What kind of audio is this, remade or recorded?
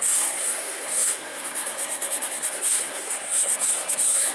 remade